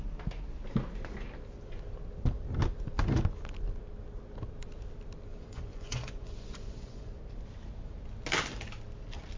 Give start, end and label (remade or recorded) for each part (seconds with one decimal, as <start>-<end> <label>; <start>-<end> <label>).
0.0-5.3 recorded; 5.3-7.2 remade; 7.2-9.4 recorded